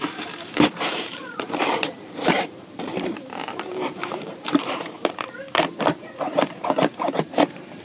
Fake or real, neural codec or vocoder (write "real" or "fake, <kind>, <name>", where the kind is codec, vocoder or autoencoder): fake, vocoder, BigVGAN v2